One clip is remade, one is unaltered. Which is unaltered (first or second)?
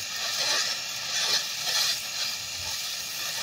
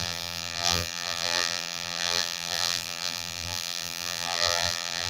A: first